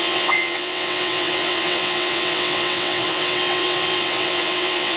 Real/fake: fake